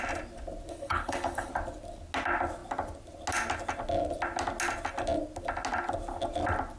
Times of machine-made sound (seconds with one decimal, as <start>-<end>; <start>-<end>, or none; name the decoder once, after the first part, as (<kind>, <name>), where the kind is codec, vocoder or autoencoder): 0.7-1.5 (codec, HILCodec)